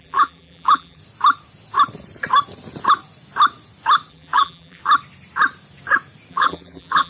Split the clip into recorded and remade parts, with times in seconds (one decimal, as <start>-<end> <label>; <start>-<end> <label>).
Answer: 0.0-1.0 remade; 1.0-4.1 recorded; 4.1-4.8 remade; 4.8-6.3 recorded; 6.3-7.1 remade